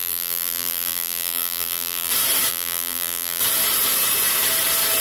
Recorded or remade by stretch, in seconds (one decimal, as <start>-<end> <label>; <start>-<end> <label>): 0.0-2.1 remade; 2.1-2.5 recorded; 2.5-3.4 remade; 3.4-5.0 recorded